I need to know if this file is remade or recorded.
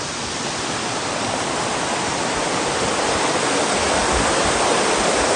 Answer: recorded